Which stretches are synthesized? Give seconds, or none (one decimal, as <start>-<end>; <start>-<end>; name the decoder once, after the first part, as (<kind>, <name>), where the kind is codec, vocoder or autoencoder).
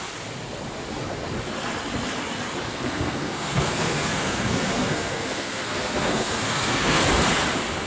2.7-7.0 (codec, SNAC)